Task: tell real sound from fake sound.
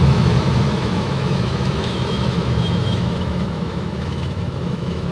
fake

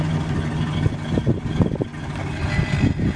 real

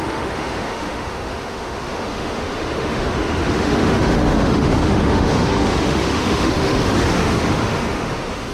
fake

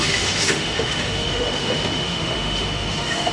fake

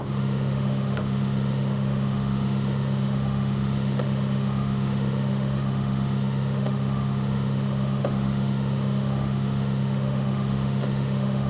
fake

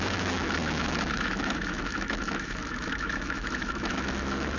fake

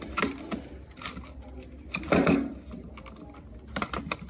real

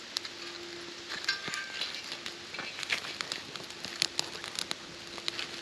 real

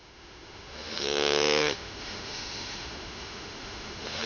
fake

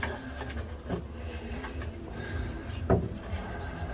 real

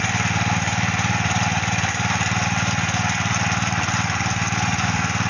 real